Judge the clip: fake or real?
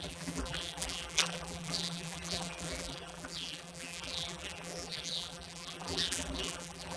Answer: fake